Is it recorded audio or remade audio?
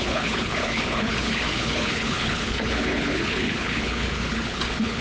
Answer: remade